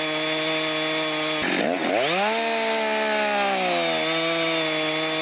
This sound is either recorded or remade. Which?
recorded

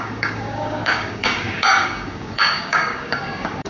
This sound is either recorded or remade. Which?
remade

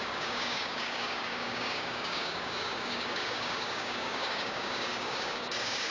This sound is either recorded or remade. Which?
remade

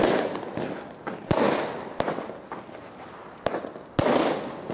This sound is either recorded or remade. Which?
recorded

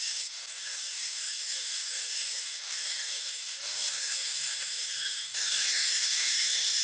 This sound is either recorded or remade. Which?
remade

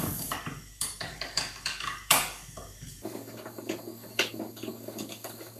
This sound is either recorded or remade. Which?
remade